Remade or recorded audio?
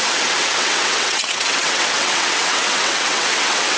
remade